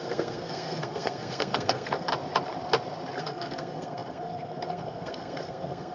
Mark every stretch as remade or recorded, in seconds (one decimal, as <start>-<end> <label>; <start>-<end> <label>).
0.0-2.1 remade; 2.1-3.2 recorded; 3.2-5.9 remade